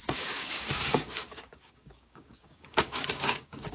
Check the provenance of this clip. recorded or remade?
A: remade